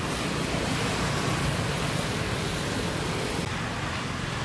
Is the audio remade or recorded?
recorded